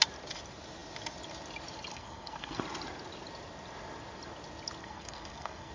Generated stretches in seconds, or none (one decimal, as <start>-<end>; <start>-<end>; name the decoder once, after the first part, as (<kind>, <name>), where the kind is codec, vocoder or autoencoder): 1.9-2.6 (codec, SNAC); 4.8-5.7